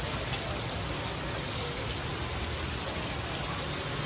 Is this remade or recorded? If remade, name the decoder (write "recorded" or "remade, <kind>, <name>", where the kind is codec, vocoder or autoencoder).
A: recorded